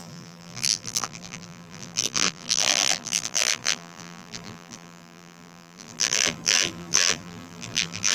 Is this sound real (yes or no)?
no